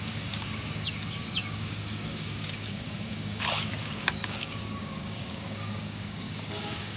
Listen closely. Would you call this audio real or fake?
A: fake